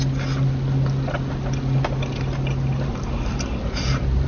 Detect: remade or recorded recorded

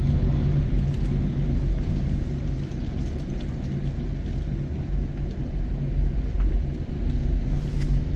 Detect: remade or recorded recorded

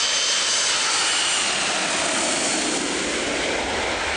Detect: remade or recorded recorded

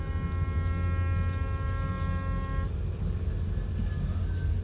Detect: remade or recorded recorded